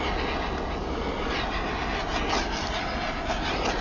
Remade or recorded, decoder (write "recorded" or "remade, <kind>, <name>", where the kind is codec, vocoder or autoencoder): recorded